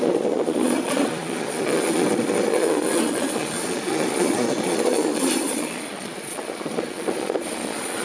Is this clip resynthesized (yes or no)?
yes